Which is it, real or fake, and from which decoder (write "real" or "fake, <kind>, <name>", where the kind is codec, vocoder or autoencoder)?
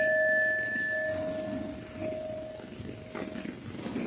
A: real